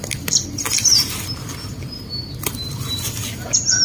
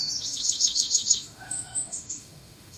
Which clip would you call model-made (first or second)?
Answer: second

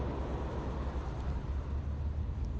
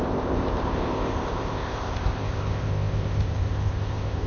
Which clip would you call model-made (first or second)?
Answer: second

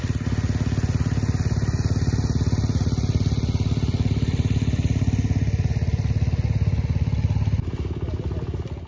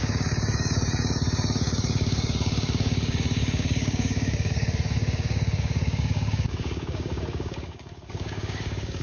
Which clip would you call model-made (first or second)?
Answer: second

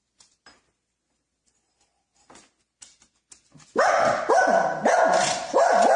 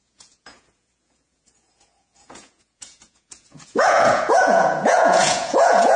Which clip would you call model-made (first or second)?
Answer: second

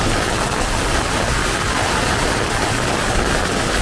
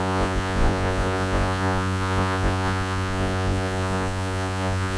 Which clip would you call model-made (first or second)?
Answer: second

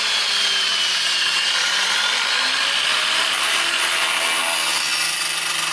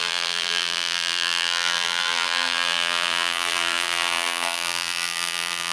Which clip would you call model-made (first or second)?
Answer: second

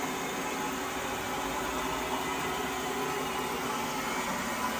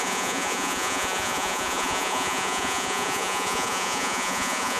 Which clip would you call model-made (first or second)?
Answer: second